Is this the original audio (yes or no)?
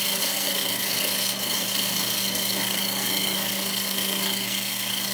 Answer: no